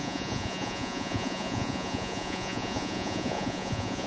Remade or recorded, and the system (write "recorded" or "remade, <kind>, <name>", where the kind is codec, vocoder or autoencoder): remade, vocoder, Vocos